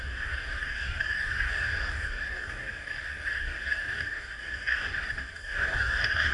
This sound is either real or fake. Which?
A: fake